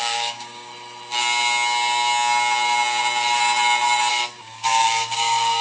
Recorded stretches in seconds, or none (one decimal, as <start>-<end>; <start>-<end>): 0.7-4.1